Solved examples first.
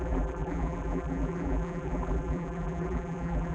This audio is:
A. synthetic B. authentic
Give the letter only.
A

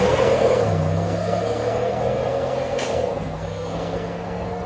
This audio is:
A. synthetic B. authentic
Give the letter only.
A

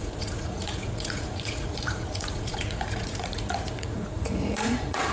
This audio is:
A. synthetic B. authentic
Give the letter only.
A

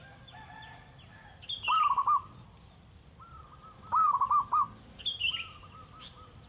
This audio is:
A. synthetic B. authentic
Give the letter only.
B